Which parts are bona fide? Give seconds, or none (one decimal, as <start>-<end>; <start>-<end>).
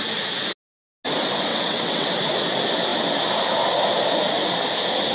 0.0-1.5; 2.1-5.1